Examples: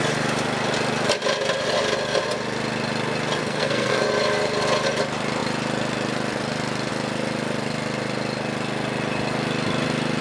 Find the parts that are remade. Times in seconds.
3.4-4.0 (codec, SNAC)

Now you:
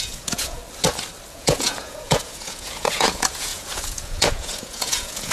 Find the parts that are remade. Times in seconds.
0.0-0.6 (vocoder, Vocos); 1.3-5.3